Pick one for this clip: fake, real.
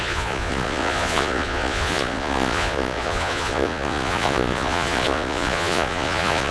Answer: fake